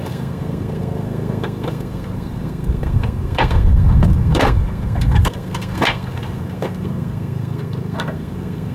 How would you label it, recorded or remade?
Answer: remade